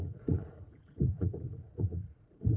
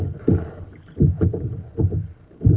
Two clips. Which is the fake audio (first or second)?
first